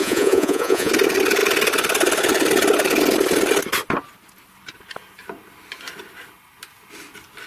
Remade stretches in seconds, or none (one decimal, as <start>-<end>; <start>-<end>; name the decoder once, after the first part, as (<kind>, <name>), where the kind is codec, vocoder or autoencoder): 0.0-0.9 (vocoder, Vocos)